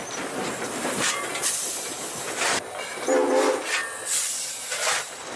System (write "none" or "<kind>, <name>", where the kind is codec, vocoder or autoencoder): none